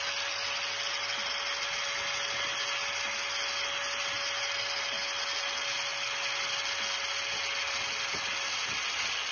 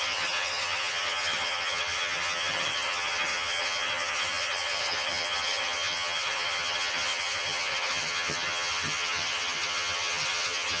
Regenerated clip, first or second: second